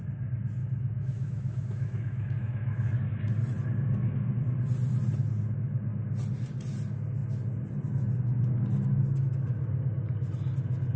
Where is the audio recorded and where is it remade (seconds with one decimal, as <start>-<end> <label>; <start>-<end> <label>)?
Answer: 0.0-0.6 recorded; 0.6-2.9 remade; 2.9-11.0 recorded